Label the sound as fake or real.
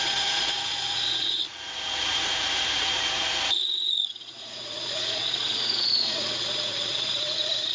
fake